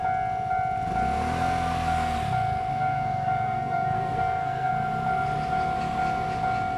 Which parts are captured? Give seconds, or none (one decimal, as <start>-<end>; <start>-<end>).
0.0-2.7; 4.7-6.8